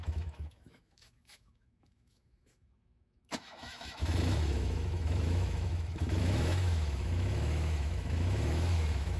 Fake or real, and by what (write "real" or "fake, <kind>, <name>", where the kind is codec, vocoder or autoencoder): fake, autoencoder, DAC-VAE